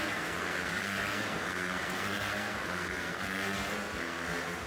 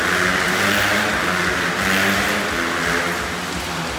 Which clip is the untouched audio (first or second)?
second